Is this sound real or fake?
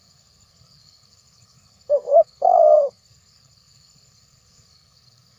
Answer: fake